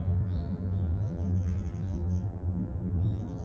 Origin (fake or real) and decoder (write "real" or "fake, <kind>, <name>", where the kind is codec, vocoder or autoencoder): fake, vocoder, BigVGAN v2